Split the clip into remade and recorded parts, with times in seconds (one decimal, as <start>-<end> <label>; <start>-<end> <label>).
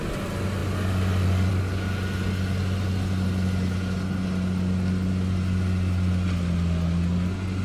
0.0-7.6 recorded